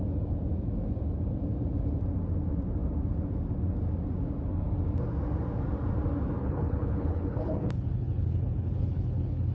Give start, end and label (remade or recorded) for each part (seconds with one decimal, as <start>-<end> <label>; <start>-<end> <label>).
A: 0.0-6.4 recorded; 6.4-9.5 remade

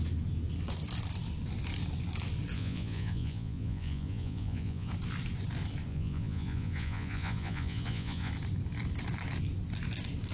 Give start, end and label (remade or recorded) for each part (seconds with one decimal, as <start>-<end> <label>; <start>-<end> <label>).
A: 0.0-2.5 recorded; 2.5-4.9 remade; 4.9-5.9 recorded; 5.9-8.3 remade; 8.3-10.3 recorded

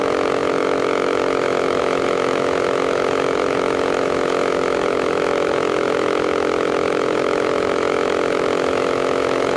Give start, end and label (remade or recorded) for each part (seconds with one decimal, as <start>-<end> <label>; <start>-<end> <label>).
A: 0.0-9.6 remade

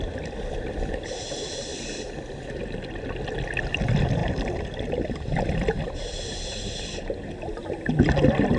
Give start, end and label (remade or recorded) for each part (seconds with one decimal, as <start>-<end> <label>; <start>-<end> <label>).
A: 0.0-8.6 recorded